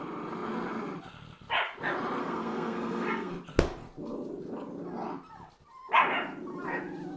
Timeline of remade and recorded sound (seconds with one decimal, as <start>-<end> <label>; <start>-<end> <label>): 0.0-2.2 recorded; 2.2-3.3 remade; 3.3-7.2 recorded